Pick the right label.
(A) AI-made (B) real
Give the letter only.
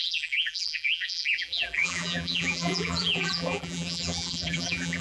A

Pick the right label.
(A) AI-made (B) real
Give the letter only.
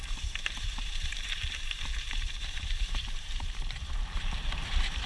A